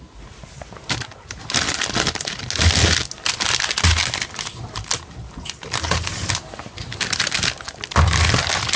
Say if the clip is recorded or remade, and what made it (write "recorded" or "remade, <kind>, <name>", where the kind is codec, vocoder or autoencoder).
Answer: recorded